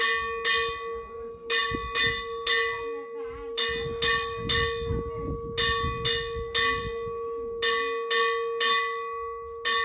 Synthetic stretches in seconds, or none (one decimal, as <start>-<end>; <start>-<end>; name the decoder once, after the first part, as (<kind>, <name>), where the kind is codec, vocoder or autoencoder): none